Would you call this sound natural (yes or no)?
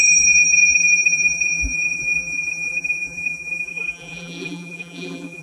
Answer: no